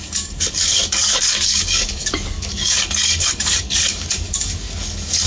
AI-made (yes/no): yes